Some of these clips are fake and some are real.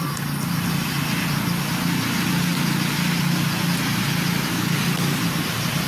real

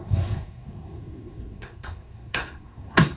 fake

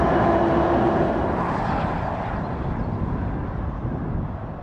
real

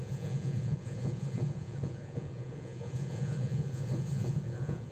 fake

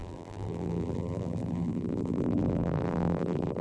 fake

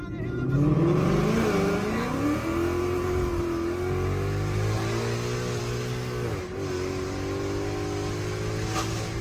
real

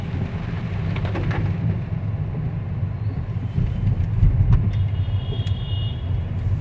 real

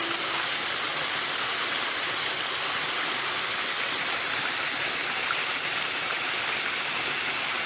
real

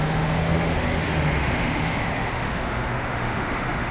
fake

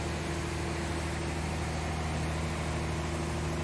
real